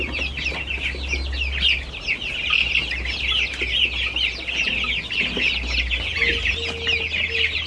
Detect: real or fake real